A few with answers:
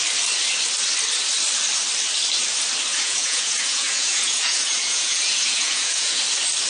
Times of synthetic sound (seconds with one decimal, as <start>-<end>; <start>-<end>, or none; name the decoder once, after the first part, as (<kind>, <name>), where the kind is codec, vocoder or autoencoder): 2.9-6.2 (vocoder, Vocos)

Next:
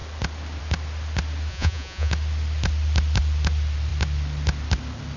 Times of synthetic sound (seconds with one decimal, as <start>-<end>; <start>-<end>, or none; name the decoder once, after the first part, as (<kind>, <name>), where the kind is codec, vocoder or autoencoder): 1.5-2.1 (vocoder, Vocos)

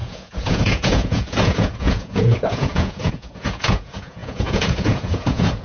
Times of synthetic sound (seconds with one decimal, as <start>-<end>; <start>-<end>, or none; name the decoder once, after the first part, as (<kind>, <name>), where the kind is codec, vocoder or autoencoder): 0.0-5.6 (vocoder, Vocos)

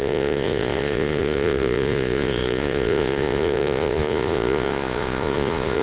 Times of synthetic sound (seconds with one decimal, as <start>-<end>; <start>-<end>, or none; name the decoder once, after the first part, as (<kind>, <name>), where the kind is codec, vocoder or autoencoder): 0.0-5.8 (vocoder, Vocos)

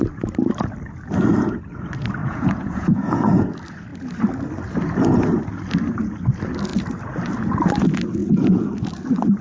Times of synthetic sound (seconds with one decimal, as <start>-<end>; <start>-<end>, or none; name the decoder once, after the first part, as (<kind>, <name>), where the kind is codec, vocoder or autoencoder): 2.2-3.4 (vocoder, Vocos)

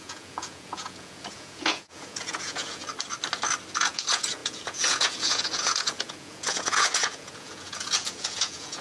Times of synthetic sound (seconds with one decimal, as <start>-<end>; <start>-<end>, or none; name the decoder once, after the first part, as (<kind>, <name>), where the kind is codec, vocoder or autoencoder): 0.0-2.8 (vocoder, Vocos); 3.7-8.8